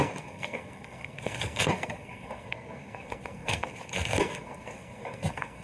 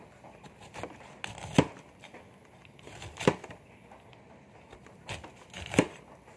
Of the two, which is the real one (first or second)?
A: second